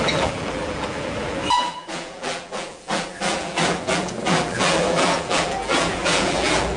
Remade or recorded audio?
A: remade